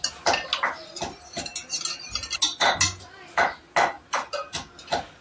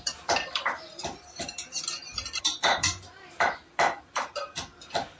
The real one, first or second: first